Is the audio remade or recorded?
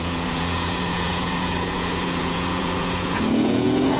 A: remade